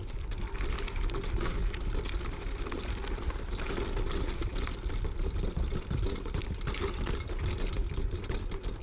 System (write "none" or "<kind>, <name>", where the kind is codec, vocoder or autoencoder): none